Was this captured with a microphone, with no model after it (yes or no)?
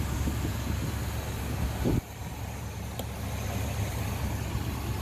yes